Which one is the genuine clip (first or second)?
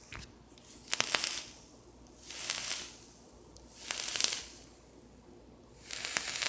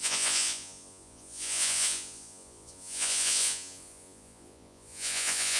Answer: first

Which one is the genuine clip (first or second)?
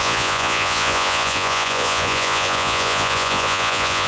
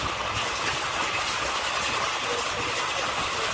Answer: second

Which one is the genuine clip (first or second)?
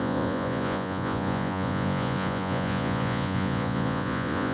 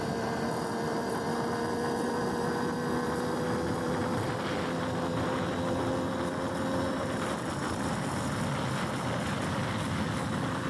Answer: second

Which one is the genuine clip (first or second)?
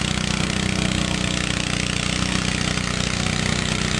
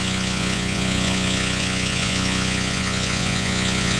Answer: first